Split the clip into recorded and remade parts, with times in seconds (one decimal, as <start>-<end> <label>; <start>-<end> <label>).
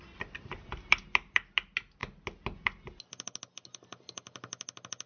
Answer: 0.0-5.1 recorded